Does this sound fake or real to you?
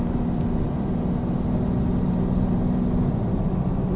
real